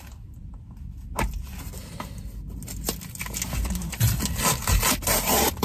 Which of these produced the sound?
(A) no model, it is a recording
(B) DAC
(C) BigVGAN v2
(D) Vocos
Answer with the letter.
A